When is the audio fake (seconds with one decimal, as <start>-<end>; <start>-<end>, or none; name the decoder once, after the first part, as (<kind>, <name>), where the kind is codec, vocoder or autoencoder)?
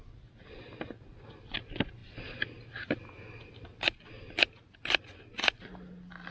none